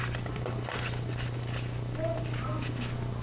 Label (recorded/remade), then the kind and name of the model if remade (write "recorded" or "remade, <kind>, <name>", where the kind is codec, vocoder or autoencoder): recorded